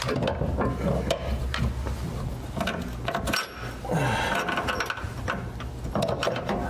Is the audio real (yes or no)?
yes